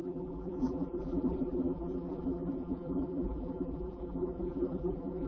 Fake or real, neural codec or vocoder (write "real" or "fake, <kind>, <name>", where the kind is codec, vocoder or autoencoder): fake, vocoder, BigVGAN v2